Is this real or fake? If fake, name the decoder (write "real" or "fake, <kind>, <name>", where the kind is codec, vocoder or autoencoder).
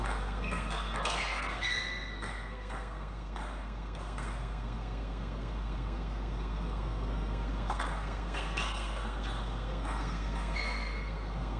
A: fake, codec, SNAC